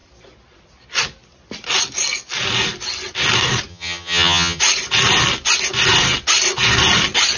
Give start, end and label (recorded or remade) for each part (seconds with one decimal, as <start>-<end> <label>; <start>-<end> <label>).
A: 0.0-3.7 recorded; 3.7-4.6 remade; 4.6-7.4 recorded